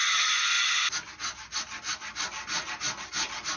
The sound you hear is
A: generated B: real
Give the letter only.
B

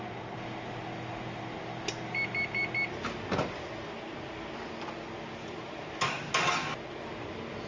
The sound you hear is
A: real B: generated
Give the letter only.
A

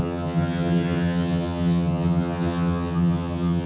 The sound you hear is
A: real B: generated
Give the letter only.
B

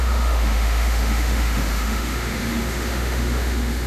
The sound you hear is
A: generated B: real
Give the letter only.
A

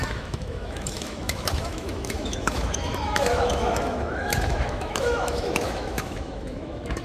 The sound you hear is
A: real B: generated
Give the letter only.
B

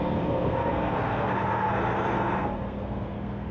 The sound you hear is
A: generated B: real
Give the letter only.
A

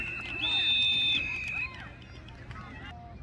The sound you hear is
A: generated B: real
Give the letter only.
B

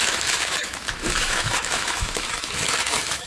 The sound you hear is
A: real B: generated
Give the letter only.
B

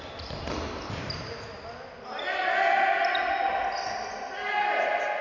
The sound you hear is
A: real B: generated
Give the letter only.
A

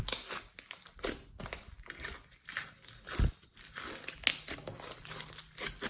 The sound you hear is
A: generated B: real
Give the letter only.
B